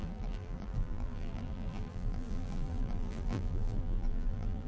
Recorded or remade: remade